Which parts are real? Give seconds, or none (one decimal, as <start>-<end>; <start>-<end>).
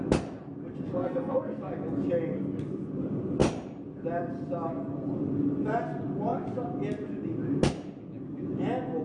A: 0.0-1.0; 1.6-9.0